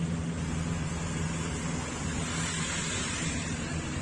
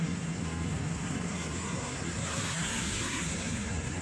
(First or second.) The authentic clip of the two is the first